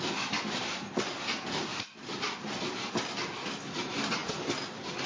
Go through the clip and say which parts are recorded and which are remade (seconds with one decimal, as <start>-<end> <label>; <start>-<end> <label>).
0.0-5.1 recorded